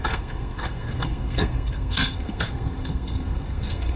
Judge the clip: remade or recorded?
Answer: remade